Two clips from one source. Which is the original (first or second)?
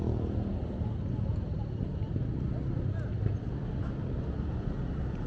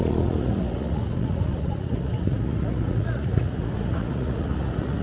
first